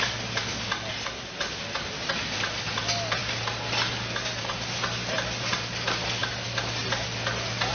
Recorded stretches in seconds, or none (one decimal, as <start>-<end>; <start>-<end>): 0.0-7.7